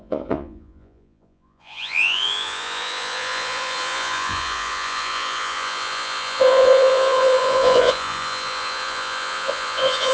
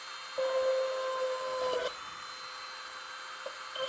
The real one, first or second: second